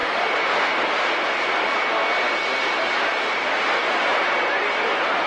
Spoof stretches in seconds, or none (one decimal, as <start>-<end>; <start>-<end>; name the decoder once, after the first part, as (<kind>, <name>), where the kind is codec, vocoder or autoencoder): none